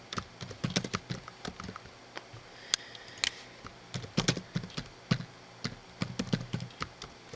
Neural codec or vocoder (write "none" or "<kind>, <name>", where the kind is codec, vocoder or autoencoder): none